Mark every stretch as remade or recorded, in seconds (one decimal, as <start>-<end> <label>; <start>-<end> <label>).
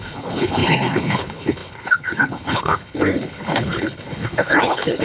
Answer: 0.0-5.0 remade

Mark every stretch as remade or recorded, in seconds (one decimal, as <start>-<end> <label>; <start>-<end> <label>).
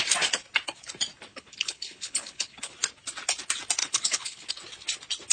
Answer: 0.0-1.3 recorded; 1.3-2.7 remade; 2.7-3.8 recorded; 3.8-4.5 remade; 4.5-5.3 recorded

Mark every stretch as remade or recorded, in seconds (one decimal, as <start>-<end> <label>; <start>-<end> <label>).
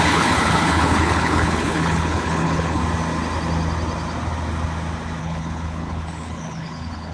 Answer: 0.0-2.8 remade; 2.8-5.2 recorded; 5.2-7.1 remade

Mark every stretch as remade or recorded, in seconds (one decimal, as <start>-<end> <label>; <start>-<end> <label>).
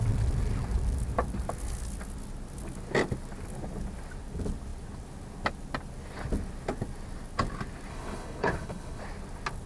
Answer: 0.0-7.9 recorded; 7.9-9.0 remade; 9.0-9.7 recorded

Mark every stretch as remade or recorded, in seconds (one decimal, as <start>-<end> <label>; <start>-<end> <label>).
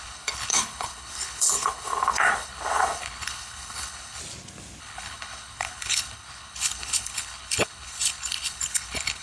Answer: 0.0-4.2 remade; 4.2-4.8 recorded; 4.8-9.2 remade